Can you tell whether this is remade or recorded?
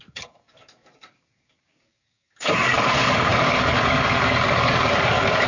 remade